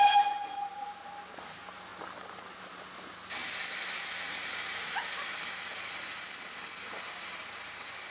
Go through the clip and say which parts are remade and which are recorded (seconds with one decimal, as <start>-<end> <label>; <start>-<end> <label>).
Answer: 0.0-8.1 recorded